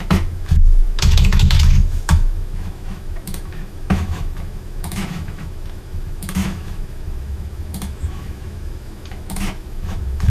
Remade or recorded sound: remade